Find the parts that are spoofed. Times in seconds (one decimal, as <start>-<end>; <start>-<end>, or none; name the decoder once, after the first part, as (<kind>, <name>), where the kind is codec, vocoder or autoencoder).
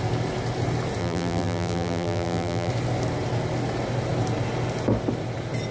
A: 1.0-2.7 (vocoder, BigVGAN v2)